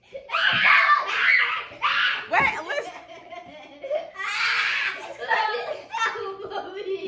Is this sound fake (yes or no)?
no